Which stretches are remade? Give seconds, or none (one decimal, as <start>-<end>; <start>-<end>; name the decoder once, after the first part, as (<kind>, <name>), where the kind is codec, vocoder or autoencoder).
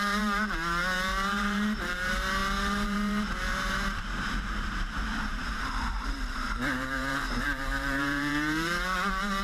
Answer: 0.0-9.4 (vocoder, BigVGAN v2)